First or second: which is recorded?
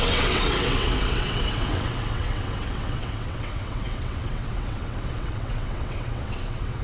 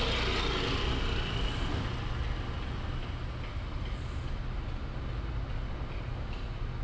second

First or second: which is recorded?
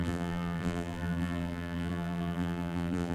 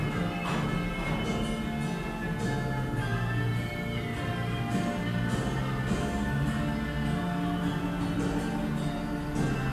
second